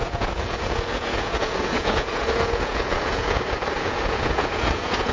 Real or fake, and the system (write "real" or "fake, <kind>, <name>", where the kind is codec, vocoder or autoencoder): fake, vocoder, Vocos